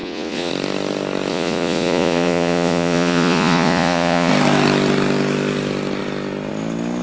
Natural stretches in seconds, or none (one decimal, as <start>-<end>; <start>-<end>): 0.5-1.3; 4.3-7.0